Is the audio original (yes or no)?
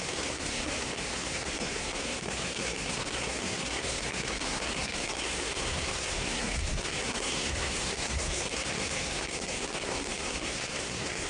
no